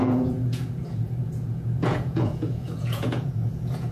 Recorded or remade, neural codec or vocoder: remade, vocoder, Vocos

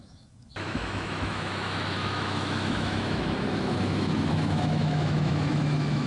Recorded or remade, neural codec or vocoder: remade, autoencoder, DAC-VAE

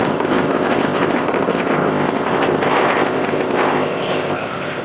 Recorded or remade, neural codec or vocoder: remade, codec, ZipCodec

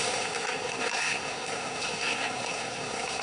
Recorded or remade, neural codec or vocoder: remade, codec, SNAC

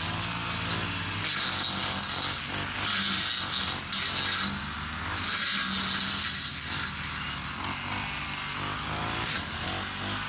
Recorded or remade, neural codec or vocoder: recorded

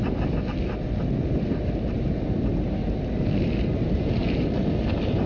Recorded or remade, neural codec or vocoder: recorded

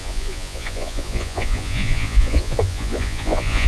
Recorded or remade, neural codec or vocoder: remade, vocoder, Vocos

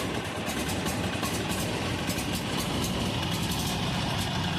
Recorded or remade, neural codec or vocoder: remade, vocoder, BigVGAN v2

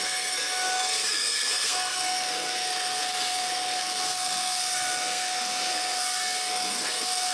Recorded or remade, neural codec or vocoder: remade, codec, SNAC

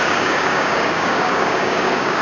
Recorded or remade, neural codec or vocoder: remade, codec, DAC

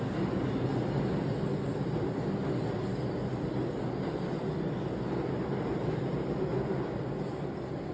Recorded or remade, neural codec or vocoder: recorded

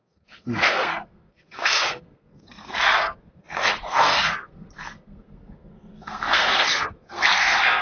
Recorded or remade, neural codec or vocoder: remade, codec, SNAC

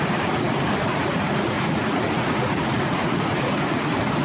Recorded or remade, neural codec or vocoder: remade, vocoder, Vocos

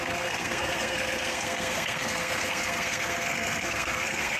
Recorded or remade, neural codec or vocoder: remade, codec, SNAC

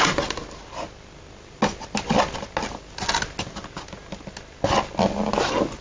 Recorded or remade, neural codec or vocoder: recorded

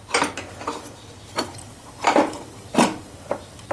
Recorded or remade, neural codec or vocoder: recorded